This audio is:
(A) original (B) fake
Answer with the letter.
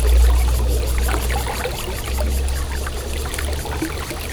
A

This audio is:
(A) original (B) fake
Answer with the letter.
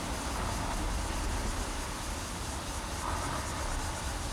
A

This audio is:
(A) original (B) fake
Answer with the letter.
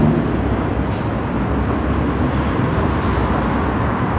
A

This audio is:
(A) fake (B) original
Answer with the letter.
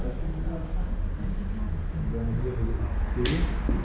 B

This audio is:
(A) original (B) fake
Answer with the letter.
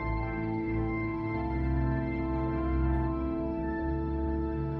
B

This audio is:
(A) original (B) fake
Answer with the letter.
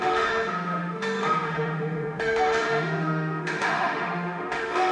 B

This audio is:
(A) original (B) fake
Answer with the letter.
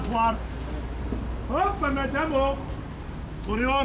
A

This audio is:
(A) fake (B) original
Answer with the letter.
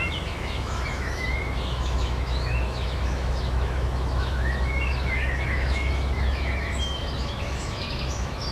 A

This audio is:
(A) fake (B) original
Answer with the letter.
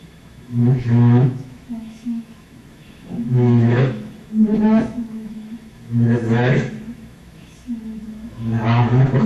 A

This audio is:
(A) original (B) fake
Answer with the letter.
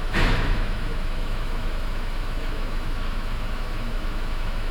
B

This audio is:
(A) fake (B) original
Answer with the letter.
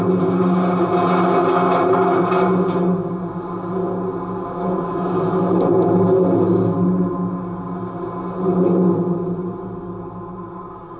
B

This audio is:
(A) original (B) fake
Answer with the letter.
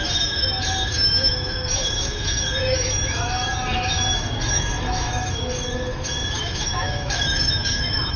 B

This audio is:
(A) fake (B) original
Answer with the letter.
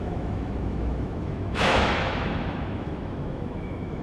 A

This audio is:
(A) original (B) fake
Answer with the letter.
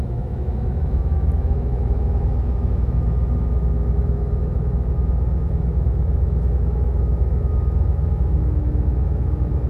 B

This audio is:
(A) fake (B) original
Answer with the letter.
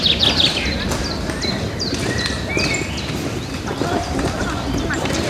B